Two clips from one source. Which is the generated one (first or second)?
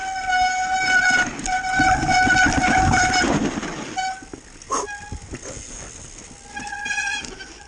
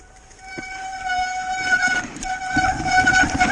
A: second